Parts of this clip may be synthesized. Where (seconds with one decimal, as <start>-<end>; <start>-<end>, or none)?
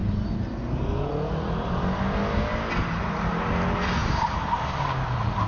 none